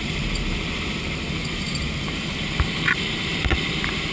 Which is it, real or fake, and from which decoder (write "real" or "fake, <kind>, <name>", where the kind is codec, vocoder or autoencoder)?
fake, vocoder, BigVGAN v2